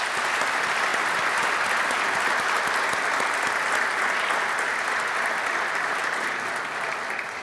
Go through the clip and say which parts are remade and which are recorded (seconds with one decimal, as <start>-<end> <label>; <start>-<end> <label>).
0.0-7.4 recorded